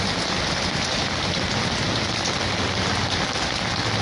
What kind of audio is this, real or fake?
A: real